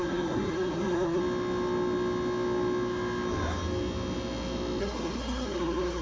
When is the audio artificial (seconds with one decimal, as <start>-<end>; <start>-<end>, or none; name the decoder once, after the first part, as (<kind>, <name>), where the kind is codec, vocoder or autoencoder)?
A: 0.0-1.2 (codec, SNAC); 4.8-6.0